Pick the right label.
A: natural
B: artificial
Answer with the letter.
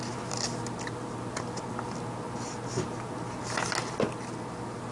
A